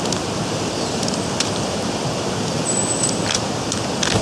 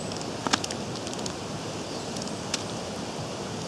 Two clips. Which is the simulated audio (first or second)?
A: first